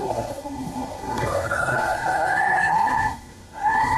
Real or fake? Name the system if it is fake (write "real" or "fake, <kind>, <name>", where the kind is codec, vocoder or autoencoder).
fake, codec, SNAC